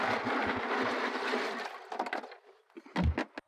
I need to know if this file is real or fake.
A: real